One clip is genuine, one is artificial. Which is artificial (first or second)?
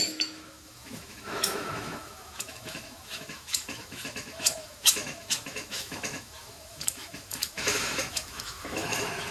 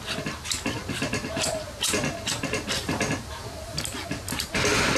first